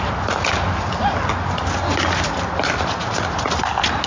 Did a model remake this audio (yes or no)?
no